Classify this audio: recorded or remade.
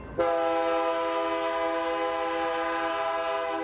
recorded